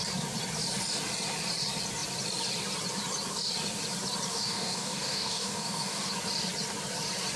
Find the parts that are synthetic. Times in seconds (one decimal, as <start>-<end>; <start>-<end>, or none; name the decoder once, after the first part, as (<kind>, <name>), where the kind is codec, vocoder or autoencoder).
4.3-6.1 (codec, DAC)